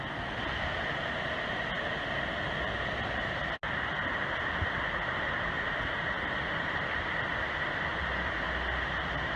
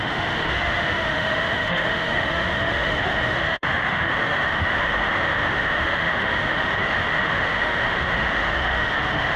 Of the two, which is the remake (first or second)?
second